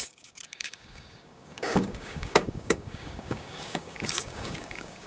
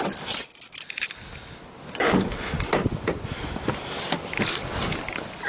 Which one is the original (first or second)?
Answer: second